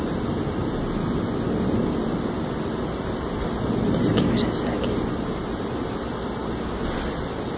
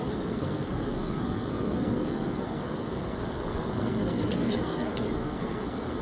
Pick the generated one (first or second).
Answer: second